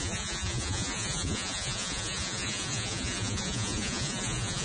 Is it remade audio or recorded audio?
remade